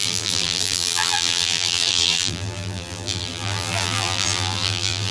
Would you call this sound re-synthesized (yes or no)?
yes